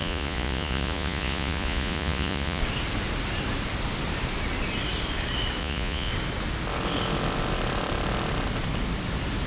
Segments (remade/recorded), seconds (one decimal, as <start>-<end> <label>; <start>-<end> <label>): 0.0-2.6 remade; 2.6-5.6 recorded; 5.6-6.1 remade; 6.1-9.5 recorded